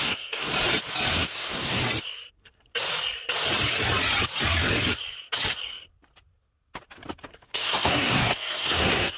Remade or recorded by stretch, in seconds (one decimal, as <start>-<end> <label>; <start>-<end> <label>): 0.0-0.5 remade; 0.5-1.1 recorded; 1.1-1.8 remade; 1.8-2.3 recorded; 2.3-2.7 remade; 2.7-7.3 recorded; 7.3-9.2 remade